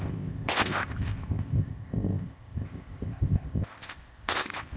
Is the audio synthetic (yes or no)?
yes